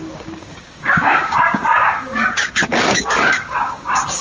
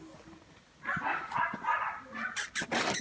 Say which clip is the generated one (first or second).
first